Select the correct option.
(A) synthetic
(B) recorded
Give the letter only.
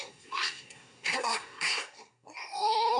A